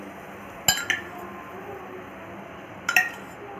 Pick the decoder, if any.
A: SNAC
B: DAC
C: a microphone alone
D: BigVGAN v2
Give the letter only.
C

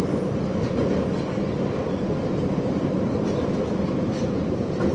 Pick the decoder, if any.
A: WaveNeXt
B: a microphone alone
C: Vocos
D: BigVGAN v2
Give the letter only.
B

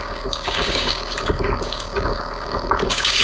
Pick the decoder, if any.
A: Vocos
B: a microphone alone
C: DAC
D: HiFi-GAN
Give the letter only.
C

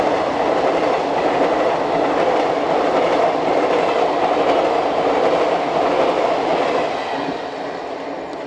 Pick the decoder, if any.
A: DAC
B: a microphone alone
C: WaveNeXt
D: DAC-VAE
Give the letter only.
B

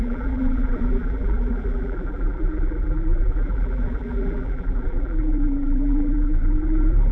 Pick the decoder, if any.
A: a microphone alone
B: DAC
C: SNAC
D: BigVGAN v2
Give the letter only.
D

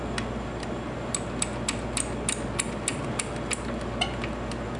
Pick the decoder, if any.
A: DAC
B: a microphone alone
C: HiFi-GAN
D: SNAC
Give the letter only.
B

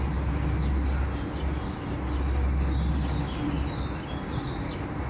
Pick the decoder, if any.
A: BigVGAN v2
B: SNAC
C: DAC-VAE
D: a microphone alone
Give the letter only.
D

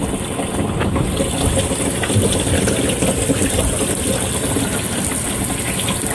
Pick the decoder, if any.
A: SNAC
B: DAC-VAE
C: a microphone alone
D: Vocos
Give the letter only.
C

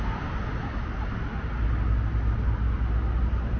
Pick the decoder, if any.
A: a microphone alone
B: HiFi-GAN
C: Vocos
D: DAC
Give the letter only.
A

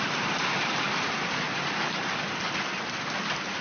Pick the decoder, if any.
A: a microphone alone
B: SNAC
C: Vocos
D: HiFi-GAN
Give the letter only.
A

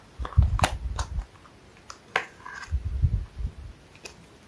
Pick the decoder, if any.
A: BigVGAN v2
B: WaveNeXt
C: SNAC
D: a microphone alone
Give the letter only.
D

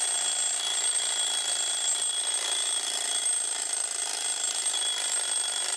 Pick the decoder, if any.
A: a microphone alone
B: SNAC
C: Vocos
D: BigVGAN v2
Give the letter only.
D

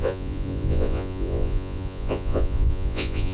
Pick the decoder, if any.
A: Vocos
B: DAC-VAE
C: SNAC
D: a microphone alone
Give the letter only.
A